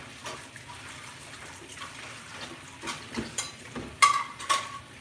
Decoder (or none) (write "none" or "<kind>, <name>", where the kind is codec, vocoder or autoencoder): none